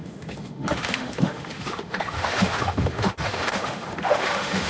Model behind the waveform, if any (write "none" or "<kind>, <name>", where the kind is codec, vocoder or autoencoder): autoencoder, DAC-VAE